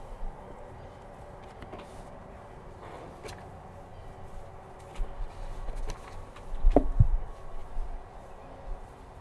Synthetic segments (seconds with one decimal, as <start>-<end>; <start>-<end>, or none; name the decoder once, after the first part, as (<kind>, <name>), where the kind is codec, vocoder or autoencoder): 2.2-3.2 (vocoder, BigVGAN v2)